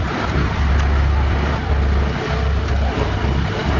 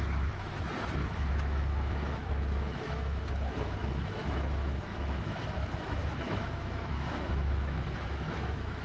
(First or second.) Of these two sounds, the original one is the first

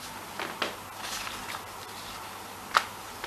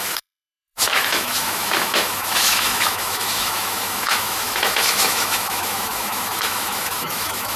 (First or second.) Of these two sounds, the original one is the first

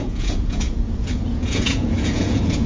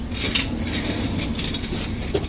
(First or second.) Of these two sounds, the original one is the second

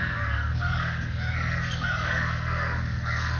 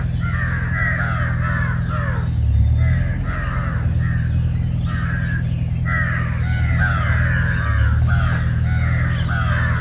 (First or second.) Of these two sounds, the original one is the second